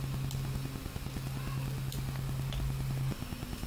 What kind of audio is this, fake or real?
real